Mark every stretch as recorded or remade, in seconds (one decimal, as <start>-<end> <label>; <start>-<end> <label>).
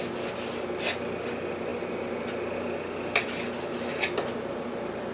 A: 0.0-5.1 recorded